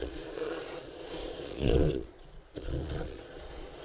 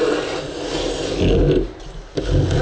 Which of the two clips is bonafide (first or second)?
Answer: second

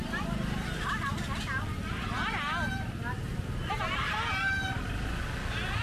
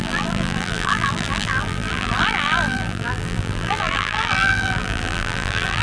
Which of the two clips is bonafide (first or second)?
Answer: first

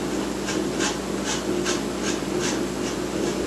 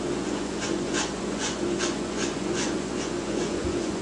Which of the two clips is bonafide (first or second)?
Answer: first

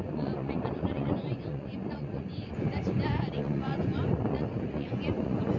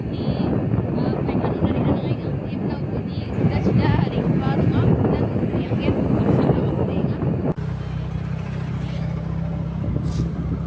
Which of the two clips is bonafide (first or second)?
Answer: second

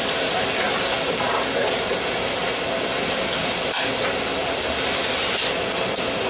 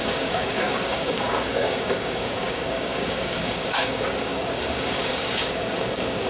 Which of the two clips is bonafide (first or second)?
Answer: first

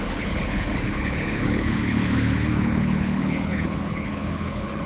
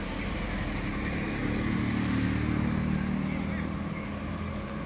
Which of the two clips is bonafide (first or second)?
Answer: second